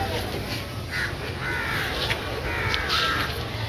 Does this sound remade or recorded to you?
recorded